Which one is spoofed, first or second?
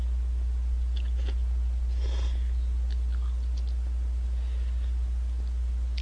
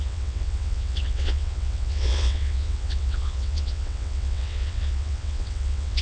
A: second